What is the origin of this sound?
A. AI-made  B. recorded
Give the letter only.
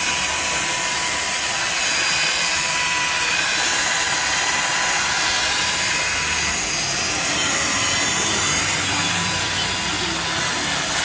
B